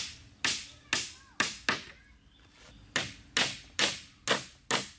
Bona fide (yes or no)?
yes